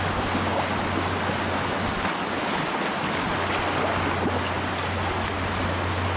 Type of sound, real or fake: real